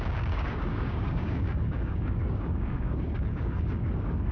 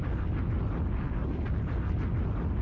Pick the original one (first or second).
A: second